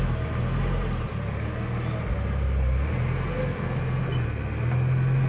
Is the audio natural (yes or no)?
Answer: yes